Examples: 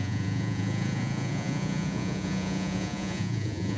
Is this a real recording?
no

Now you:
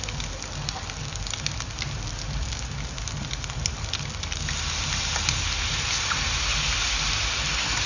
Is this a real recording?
yes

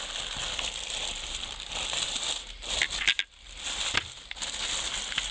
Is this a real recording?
yes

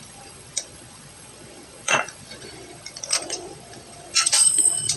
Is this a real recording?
no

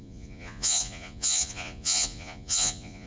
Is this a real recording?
no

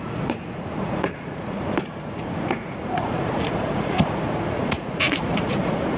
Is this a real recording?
no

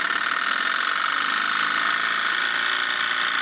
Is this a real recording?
yes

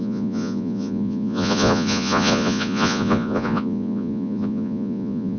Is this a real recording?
no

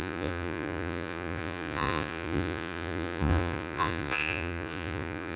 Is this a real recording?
no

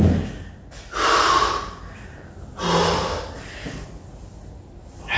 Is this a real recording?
yes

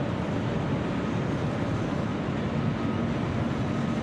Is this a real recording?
yes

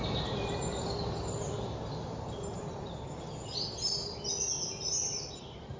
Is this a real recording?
yes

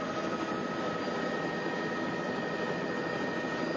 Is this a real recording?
yes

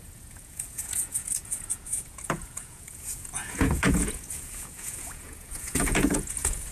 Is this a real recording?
no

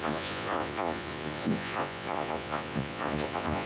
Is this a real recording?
no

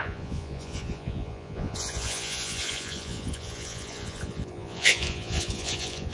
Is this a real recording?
no